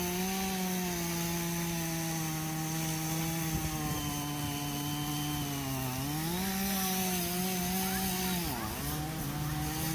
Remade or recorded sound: recorded